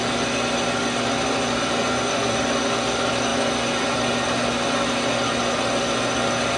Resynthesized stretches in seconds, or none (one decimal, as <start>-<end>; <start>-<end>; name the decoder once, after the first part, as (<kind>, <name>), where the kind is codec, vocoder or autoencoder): 1.8-2.4 (vocoder, Vocos)